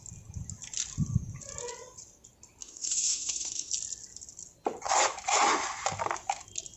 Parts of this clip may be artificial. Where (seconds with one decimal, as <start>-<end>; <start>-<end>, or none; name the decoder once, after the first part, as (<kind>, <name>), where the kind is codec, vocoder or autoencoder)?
2.6-3.7 (autoencoder, DAC-VAE)